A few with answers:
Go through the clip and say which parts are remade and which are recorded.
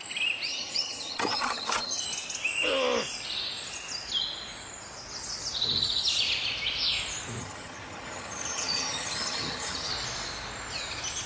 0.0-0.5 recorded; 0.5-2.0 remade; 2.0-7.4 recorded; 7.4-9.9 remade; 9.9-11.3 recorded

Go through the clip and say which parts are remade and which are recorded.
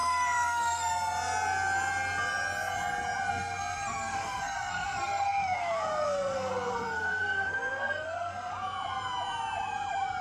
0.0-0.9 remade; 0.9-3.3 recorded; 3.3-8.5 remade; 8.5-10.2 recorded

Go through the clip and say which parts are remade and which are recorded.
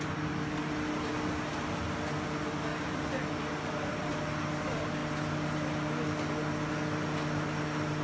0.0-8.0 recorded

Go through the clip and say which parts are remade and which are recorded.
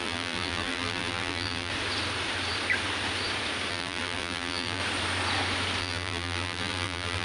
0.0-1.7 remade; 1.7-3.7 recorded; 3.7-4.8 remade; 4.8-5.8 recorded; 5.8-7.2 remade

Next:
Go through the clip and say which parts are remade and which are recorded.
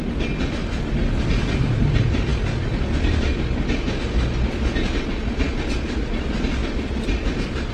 0.0-7.7 recorded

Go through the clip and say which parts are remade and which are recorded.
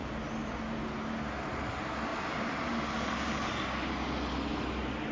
0.0-5.1 recorded